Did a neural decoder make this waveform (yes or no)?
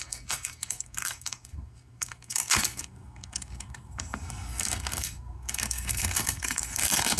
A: yes